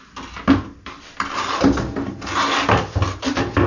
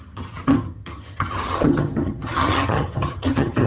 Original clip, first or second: first